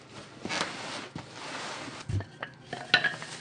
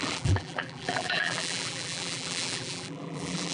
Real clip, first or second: first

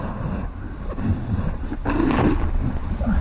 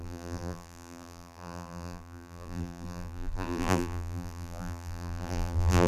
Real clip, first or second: first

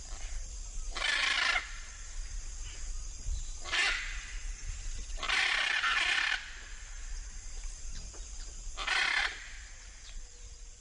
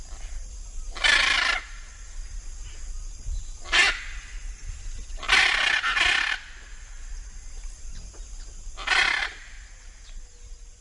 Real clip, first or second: second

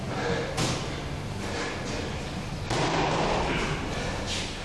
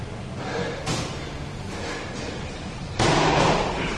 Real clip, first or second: first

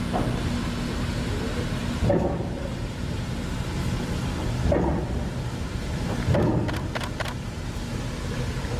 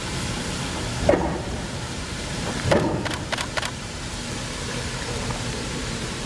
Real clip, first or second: first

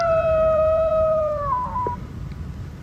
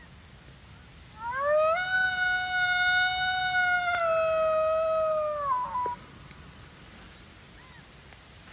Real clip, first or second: second